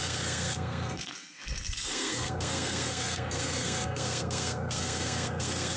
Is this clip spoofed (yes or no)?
yes